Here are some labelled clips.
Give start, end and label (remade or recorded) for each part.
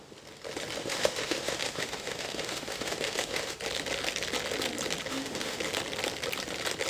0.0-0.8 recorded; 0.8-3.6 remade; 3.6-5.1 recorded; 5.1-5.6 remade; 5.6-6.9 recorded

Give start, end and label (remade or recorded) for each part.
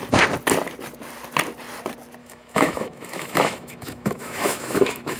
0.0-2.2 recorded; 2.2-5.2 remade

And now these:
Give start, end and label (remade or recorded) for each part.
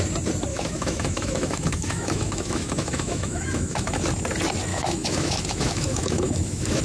0.0-0.5 recorded; 0.5-4.1 remade; 4.1-4.7 recorded; 4.7-6.8 remade